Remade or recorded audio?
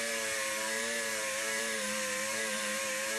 remade